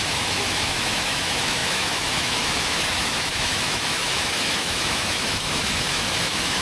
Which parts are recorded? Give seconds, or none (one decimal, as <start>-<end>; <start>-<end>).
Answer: none